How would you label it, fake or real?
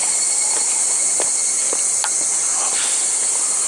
real